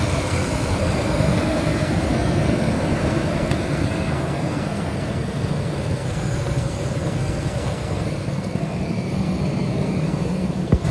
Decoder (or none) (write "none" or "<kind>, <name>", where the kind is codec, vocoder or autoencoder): codec, SNAC